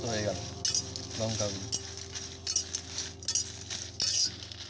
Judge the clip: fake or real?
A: real